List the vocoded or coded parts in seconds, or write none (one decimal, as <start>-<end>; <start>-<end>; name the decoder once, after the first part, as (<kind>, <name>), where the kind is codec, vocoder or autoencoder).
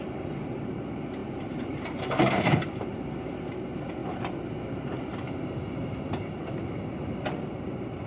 1.2-1.8 (vocoder, BigVGAN v2)